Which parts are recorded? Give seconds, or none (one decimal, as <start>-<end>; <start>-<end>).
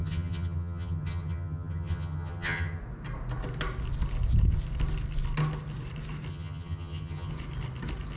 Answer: 2.8-6.3; 7.3-8.2